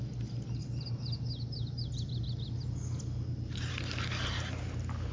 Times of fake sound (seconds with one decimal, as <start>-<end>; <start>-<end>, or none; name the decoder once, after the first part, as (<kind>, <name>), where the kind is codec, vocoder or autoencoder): none